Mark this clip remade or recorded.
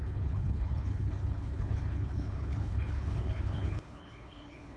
remade